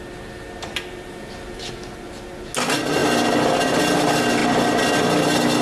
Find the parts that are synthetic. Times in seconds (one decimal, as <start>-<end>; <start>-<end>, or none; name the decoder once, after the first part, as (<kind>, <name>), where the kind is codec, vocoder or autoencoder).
none